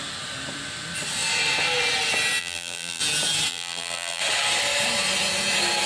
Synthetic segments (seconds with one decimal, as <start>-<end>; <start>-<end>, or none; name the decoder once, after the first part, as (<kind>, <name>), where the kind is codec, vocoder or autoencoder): 2.4-3.0 (vocoder, BigVGAN v2); 3.5-4.2